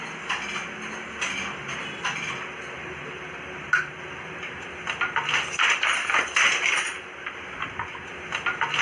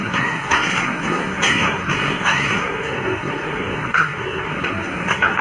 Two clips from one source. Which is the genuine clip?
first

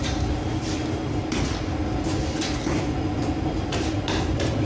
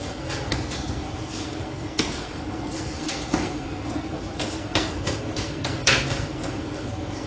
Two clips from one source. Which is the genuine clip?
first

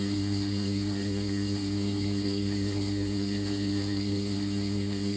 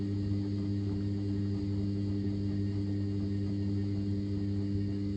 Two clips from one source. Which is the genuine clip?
second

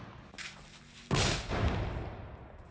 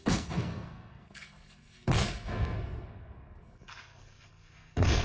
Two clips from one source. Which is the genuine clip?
first